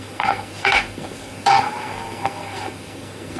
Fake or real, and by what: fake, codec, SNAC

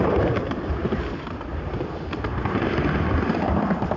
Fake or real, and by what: real